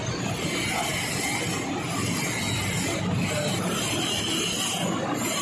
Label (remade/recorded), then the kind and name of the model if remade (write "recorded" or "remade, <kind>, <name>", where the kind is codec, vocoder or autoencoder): recorded